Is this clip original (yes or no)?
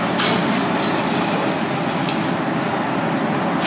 yes